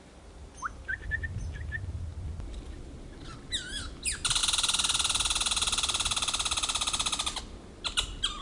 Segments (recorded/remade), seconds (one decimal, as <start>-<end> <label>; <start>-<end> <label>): 0.0-8.4 recorded